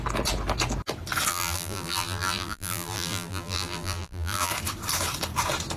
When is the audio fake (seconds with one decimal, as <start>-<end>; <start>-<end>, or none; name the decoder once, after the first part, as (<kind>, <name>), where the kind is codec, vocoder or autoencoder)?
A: 1.3-4.5 (vocoder, BigVGAN v2)